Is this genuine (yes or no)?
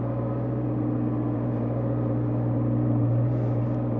yes